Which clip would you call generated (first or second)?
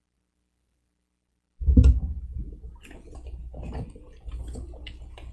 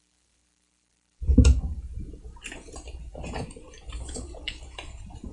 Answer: second